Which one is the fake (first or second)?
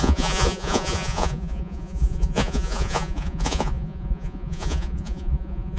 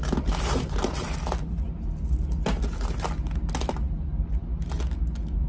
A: first